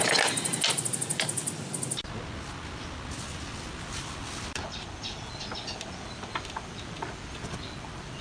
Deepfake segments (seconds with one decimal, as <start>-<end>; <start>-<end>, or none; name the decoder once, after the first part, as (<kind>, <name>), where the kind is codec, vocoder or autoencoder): none